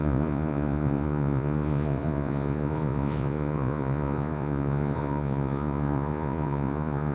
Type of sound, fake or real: fake